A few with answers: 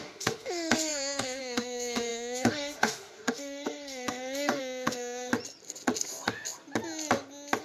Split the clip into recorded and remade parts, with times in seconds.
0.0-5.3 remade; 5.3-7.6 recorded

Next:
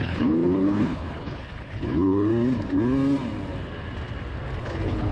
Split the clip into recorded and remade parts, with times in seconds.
0.0-2.3 remade; 2.3-4.6 recorded; 4.6-5.1 remade

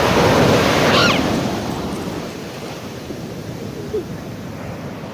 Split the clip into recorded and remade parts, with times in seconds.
0.0-1.0 recorded; 1.0-4.1 remade; 4.1-5.1 recorded

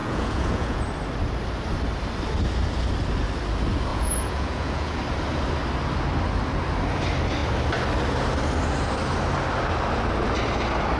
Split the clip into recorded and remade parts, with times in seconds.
0.0-0.8 remade; 0.8-3.9 recorded; 3.9-5.0 remade; 5.0-11.0 recorded